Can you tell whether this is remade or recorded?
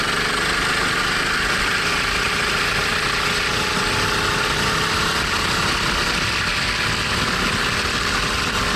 recorded